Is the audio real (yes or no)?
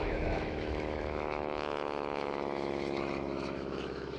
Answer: no